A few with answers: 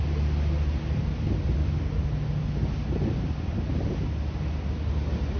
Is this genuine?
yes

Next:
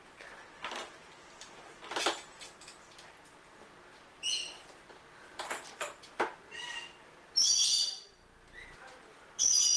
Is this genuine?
yes